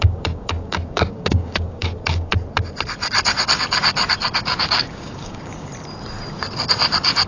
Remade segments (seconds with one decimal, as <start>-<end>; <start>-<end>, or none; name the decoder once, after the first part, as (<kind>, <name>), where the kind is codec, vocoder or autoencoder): 0.0-2.3 (codec, DAC); 4.4-5.7